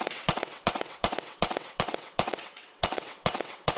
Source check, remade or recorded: remade